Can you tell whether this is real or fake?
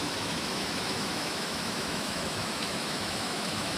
fake